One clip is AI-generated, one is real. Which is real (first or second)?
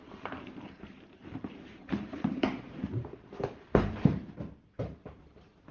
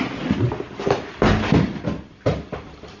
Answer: second